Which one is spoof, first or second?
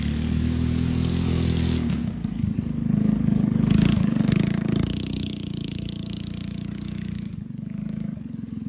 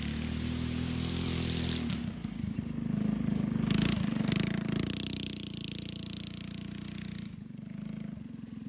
first